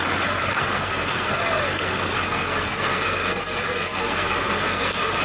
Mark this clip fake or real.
fake